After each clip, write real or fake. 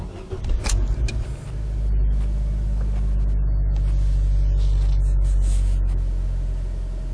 real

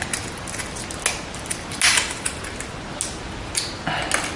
real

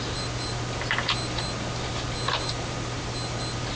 real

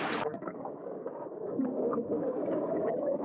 fake